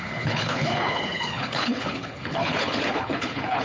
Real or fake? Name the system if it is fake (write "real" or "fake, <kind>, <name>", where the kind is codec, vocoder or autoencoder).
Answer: fake, codec, HILCodec